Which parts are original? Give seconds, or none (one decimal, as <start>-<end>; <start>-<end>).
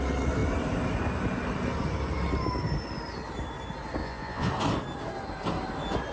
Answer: 0.0-4.0; 4.5-6.1